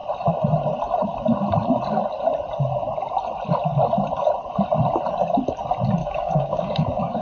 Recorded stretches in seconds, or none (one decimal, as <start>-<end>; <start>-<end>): 0.0-6.0